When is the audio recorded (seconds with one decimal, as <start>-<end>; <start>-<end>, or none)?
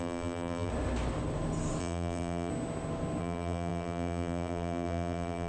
0.7-1.8; 2.5-3.2